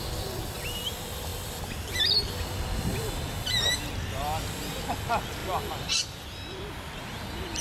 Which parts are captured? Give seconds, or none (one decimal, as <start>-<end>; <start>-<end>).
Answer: 0.0-7.6